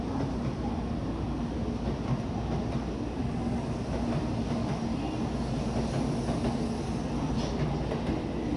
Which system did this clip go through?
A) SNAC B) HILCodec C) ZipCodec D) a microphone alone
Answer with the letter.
D